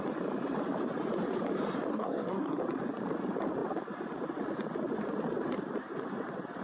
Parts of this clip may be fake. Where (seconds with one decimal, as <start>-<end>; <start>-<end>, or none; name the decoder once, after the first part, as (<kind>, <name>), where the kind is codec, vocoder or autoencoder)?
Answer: 1.9-2.6 (codec, SNAC)